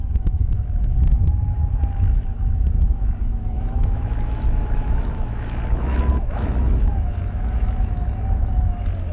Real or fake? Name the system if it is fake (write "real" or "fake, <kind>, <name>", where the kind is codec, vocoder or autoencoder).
fake, autoencoder, DAC-VAE